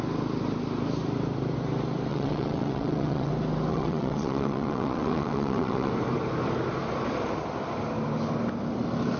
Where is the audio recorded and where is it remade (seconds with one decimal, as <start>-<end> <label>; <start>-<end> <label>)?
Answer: 0.0-2.1 recorded; 2.1-3.3 remade; 3.3-3.7 recorded; 3.7-5.9 remade; 5.9-9.2 recorded